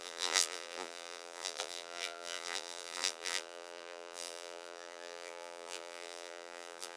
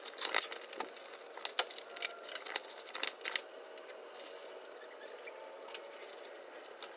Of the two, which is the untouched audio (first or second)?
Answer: second